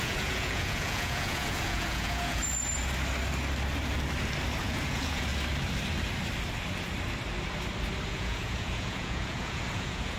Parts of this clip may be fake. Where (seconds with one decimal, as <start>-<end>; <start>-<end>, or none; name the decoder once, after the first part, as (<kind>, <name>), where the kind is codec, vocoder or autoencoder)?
0.0-2.4 (vocoder, Vocos); 4.6-5.3; 8.1-10.2